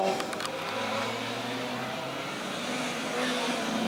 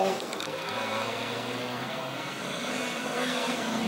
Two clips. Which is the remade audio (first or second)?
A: second